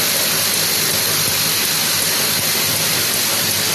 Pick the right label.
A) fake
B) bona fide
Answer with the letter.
B